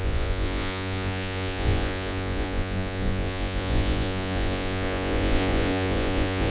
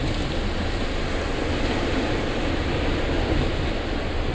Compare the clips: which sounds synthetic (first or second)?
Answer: first